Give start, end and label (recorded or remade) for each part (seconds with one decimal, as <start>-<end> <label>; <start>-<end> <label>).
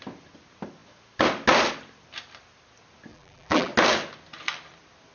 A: 0.0-3.1 recorded; 3.1-3.7 remade; 3.7-5.1 recorded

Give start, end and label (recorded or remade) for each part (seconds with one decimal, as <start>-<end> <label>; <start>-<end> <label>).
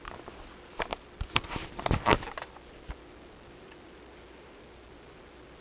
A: 0.0-5.6 recorded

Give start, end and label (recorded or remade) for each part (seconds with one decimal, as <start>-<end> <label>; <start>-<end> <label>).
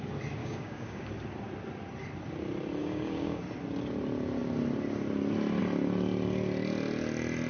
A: 0.0-0.4 recorded; 0.4-1.1 remade; 1.1-2.8 recorded; 2.8-3.4 remade; 3.4-7.5 recorded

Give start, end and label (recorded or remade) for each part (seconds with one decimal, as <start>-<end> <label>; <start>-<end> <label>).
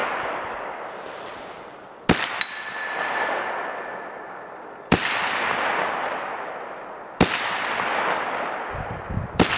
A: 0.0-9.6 recorded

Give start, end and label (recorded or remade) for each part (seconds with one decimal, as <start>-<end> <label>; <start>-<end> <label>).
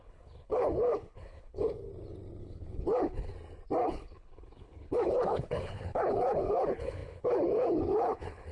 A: 0.0-1.9 remade; 1.9-2.4 recorded; 2.4-3.3 remade; 3.3-3.8 recorded; 3.8-8.5 remade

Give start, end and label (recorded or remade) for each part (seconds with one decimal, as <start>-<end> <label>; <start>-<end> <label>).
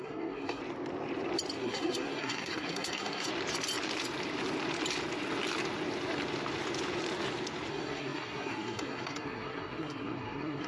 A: 0.0-0.6 remade; 0.6-1.6 recorded; 1.6-3.3 remade; 3.3-7.7 recorded; 7.7-10.7 remade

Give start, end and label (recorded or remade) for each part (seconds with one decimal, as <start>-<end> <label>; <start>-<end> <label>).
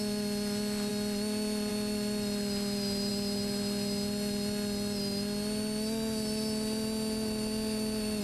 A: 0.0-8.2 recorded